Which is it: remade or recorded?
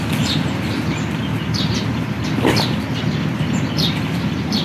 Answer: remade